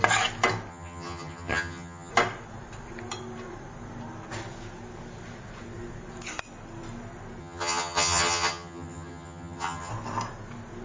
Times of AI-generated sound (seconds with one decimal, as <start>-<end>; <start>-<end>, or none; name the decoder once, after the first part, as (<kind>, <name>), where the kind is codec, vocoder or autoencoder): 0.7-2.1 (vocoder, HiFi-GAN); 7.4-9.9